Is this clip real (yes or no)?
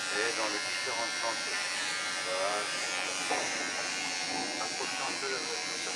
no